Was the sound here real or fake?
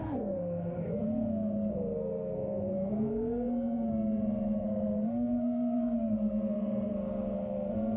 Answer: fake